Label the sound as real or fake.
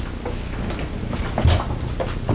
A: real